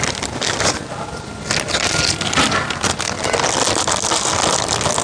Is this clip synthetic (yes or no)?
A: no